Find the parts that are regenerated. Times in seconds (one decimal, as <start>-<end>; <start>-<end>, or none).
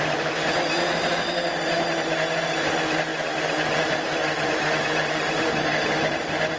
none